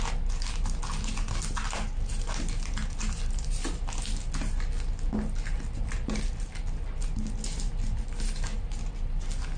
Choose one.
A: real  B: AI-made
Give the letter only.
A